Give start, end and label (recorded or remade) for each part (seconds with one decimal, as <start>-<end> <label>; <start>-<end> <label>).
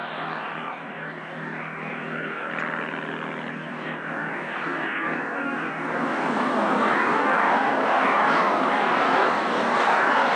0.0-2.5 remade; 2.5-3.5 recorded; 3.5-10.4 remade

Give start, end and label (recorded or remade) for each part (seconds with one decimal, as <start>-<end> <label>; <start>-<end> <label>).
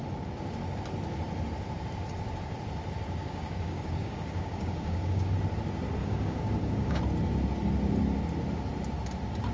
0.0-3.2 recorded; 3.2-5.3 remade; 5.3-6.0 recorded; 6.0-7.0 remade; 7.0-9.5 recorded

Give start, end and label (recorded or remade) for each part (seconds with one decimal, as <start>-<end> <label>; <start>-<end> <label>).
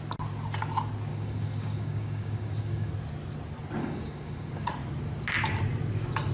0.0-1.1 recorded; 1.1-2.9 remade; 2.9-3.8 recorded; 3.8-4.7 remade; 4.7-6.3 recorded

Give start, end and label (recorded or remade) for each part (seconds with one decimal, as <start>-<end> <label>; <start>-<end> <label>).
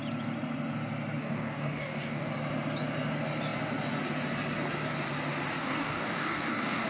0.0-1.2 recorded; 1.2-2.3 remade; 2.3-5.6 recorded; 5.6-6.9 remade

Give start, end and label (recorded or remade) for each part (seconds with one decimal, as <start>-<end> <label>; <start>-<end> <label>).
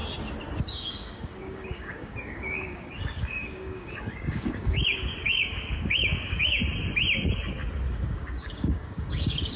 0.0-0.6 recorded; 0.6-6.6 remade; 6.6-7.9 recorded; 7.9-9.6 remade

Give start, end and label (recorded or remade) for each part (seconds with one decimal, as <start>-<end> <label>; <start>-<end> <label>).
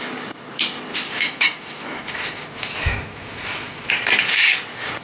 0.0-0.9 remade; 0.9-3.9 recorded; 3.9-5.0 remade